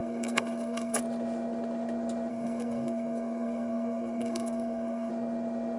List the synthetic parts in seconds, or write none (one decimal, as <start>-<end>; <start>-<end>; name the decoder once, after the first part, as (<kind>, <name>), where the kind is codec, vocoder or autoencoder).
0.0-1.0 (codec, SNAC); 2.3-5.1